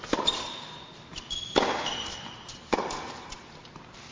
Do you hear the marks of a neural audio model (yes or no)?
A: no